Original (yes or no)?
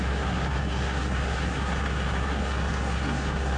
no